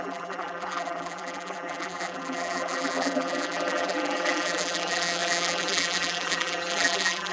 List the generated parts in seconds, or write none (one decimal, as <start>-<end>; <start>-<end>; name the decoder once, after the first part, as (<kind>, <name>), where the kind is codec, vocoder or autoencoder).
0.0-7.3 (vocoder, BigVGAN v2)